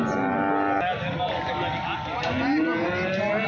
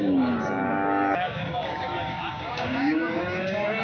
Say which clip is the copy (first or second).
second